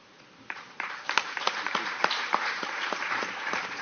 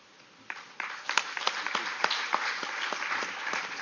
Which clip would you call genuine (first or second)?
second